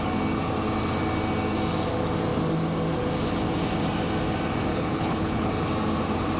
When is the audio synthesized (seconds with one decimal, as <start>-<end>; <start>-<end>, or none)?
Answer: 4.7-5.5